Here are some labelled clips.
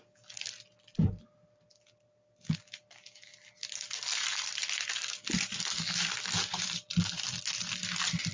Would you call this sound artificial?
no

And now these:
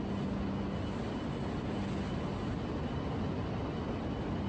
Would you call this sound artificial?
no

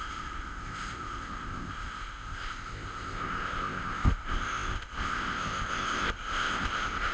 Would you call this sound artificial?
yes